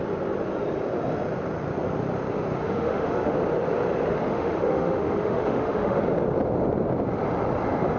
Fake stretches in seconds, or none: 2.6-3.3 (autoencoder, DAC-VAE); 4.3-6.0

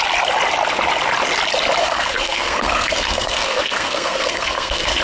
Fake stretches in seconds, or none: 1.8-5.0 (codec, SNAC)

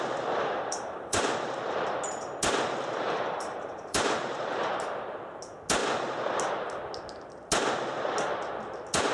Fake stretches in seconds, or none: 0.4-1.6 (vocoder, BigVGAN v2); 2.8-4.7

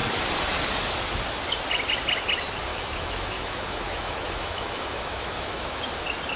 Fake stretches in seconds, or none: 2.7-5.8 (autoencoder, DAC-VAE)

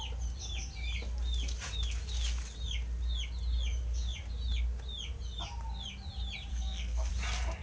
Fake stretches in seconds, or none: 6.5-7.1 (codec, SNAC)